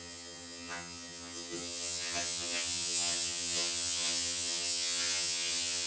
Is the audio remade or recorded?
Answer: remade